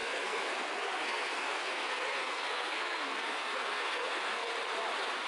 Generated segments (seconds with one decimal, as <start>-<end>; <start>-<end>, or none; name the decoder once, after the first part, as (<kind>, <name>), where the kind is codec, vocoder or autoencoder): 0.0-4.5 (codec, SNAC)